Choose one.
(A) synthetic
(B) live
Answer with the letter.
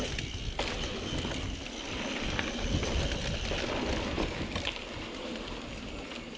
B